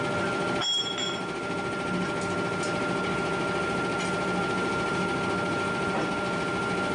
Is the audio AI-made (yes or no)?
no